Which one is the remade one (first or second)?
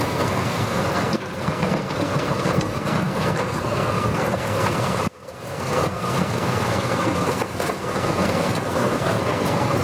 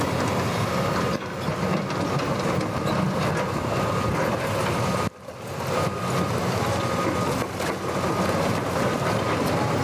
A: first